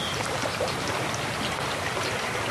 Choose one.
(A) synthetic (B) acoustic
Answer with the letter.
B